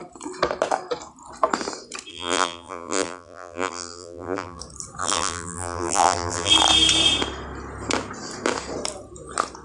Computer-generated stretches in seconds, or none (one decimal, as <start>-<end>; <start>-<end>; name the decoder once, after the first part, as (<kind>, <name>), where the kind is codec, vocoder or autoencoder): 2.1-4.6 (vocoder, BigVGAN v2); 5.0-6.5